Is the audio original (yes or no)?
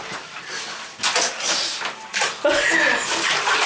yes